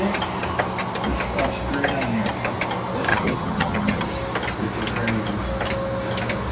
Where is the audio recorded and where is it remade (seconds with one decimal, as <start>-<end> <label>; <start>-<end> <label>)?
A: 0.0-3.1 recorded; 3.1-4.1 remade; 4.1-6.5 recorded